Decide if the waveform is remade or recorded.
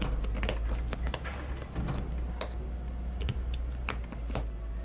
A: recorded